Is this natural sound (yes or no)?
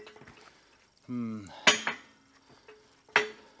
yes